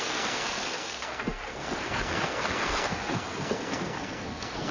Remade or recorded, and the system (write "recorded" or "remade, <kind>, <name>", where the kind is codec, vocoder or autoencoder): remade, codec, SNAC